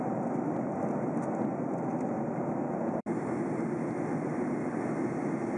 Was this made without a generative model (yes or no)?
yes